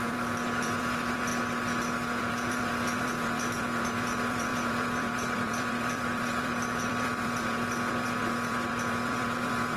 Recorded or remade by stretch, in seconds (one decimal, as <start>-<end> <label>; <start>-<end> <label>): 0.0-1.3 remade; 1.3-2.2 recorded; 2.2-9.8 remade